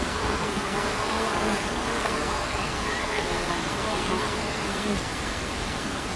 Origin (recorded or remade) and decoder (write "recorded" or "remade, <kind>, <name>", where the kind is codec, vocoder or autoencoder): remade, codec, SNAC